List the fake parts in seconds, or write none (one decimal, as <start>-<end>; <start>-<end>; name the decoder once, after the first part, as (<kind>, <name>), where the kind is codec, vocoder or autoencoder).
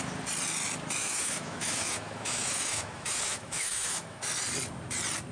1.0-4.2 (autoencoder, DAC-VAE)